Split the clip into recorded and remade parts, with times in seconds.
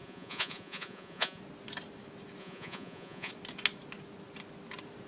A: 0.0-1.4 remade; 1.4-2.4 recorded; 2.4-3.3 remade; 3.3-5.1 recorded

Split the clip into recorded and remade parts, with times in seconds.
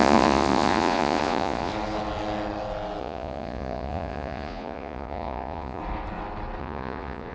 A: 0.0-1.7 remade; 1.7-3.0 recorded; 3.0-5.8 remade; 5.8-6.6 recorded; 6.6-7.3 remade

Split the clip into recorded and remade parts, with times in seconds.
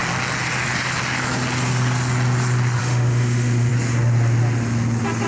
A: 0.0-2.8 recorded; 2.8-3.7 remade; 3.7-5.3 recorded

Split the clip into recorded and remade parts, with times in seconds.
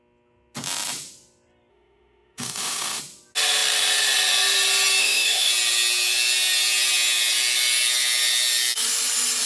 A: 0.0-1.7 recorded; 1.7-3.0 remade; 3.0-5.0 recorded; 5.0-5.5 remade; 5.5-9.5 recorded